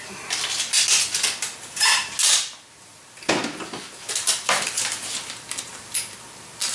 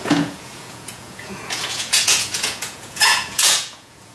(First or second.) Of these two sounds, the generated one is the second